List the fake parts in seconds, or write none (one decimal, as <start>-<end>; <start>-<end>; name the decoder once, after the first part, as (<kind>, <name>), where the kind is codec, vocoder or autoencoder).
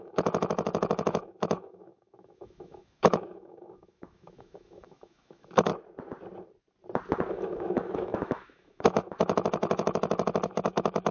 0.0-5.7 (autoencoder, DAC-VAE); 7.3-11.1